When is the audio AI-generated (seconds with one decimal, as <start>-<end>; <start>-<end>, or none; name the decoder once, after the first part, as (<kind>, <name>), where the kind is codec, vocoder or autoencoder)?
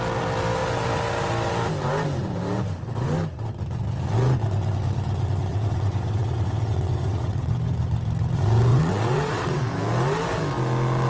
5.5-7.5 (vocoder, WaveNeXt); 8.7-9.6